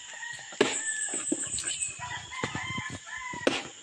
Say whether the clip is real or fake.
real